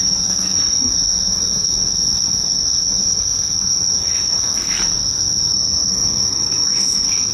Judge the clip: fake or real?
fake